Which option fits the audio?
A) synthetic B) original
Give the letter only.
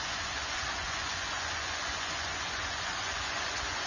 A